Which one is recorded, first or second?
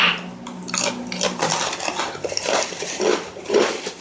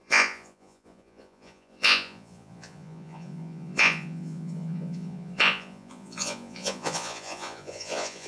first